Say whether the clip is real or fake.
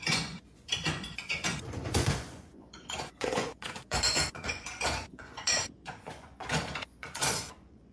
fake